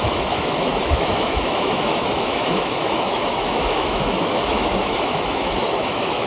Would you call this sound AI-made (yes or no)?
yes